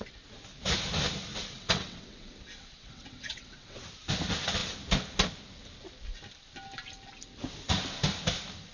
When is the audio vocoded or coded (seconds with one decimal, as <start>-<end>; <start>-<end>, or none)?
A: 1.3-3.9